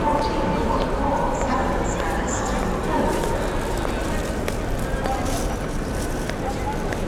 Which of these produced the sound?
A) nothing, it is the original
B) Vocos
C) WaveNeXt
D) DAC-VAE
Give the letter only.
A